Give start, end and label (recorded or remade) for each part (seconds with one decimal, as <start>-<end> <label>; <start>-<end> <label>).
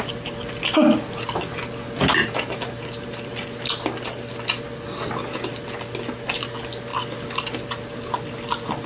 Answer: 0.0-8.9 recorded